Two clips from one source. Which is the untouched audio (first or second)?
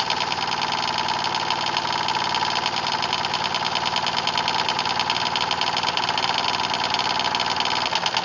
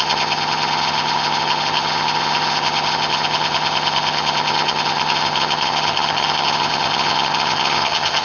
first